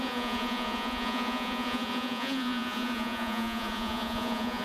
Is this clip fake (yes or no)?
yes